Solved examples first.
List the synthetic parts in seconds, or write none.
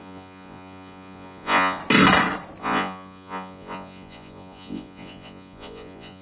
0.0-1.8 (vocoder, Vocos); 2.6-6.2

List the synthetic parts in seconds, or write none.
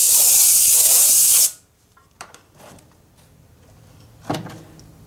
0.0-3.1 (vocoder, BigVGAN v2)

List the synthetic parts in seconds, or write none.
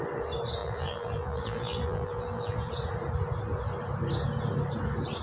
0.6-2.7 (vocoder, BigVGAN v2)